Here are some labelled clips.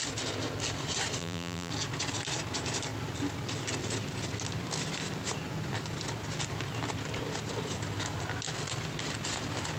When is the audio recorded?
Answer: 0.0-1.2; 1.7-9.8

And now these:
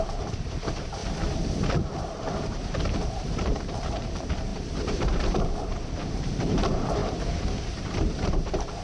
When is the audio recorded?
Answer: 1.0-1.7

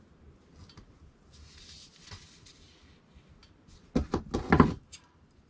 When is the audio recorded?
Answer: 0.0-5.5